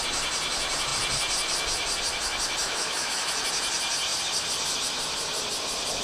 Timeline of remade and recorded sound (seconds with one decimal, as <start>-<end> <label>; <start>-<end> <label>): 0.0-2.6 recorded; 2.6-3.3 remade; 3.3-6.0 recorded